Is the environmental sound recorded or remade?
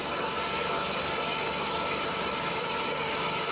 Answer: remade